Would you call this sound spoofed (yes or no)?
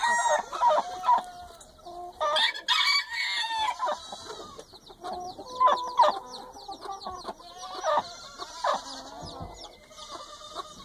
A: no